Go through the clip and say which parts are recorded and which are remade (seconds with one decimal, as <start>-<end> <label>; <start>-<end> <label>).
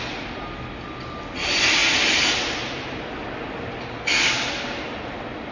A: 0.0-5.5 recorded